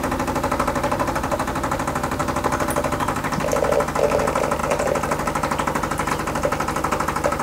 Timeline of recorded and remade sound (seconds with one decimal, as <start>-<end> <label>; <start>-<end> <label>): 0.0-7.4 recorded